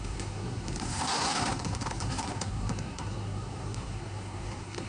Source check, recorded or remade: remade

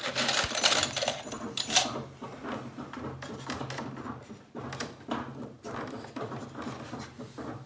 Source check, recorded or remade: recorded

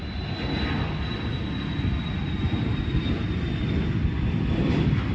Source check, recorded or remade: recorded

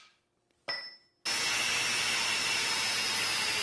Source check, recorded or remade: recorded